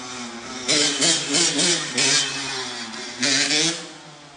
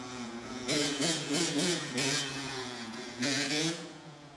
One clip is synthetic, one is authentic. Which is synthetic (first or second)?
second